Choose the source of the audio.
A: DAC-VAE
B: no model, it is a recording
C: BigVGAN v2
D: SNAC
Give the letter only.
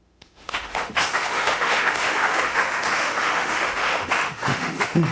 A